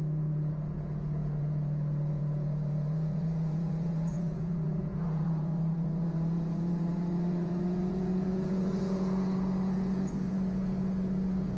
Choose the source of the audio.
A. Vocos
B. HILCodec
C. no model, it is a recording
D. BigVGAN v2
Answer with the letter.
A